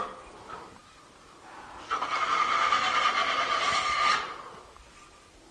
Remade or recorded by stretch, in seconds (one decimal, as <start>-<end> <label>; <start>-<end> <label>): 0.0-5.5 recorded